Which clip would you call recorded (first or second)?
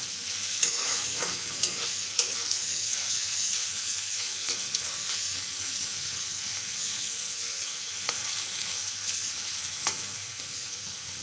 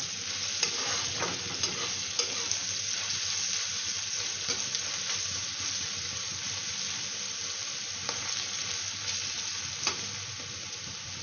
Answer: second